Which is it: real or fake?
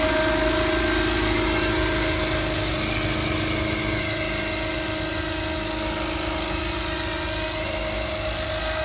real